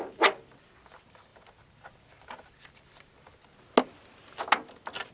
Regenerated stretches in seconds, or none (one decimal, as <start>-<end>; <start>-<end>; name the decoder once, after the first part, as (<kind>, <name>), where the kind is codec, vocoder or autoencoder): none